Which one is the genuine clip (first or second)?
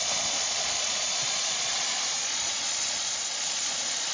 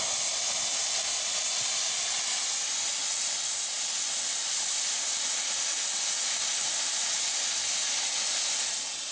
second